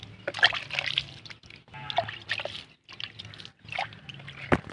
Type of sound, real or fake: real